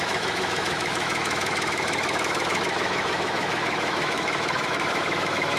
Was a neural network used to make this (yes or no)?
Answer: yes